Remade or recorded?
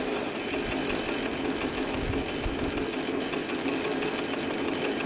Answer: recorded